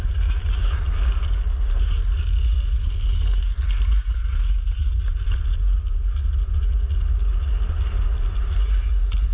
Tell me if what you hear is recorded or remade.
recorded